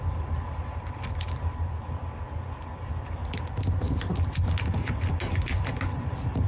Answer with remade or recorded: recorded